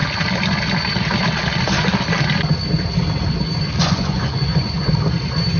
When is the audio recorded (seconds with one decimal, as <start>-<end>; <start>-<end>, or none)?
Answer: 0.0-3.8; 4.9-5.6